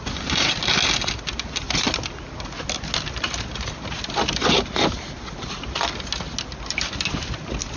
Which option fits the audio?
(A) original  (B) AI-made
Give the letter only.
A